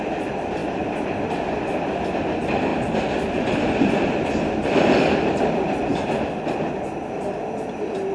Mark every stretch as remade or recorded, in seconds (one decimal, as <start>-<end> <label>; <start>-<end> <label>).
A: 0.0-2.7 remade; 2.7-3.3 recorded; 3.3-8.1 remade